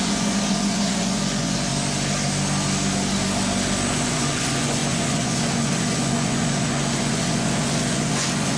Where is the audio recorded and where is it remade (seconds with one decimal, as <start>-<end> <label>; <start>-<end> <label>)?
0.0-1.7 remade; 1.7-3.9 recorded; 3.9-8.6 remade